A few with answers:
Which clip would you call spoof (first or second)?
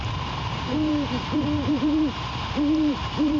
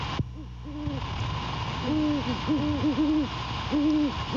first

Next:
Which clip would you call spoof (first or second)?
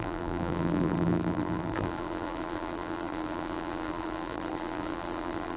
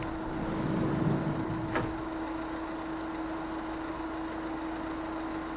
first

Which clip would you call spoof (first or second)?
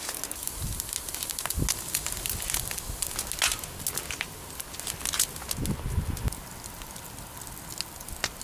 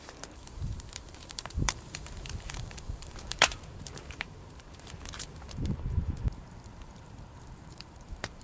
second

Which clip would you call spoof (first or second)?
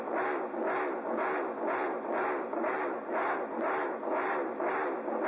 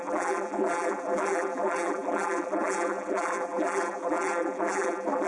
second